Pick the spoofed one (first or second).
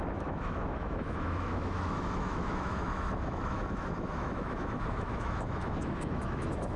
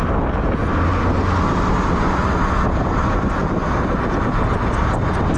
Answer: first